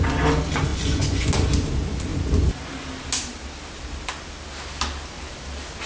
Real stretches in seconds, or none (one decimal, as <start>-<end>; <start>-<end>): 0.0-0.7; 1.3-5.9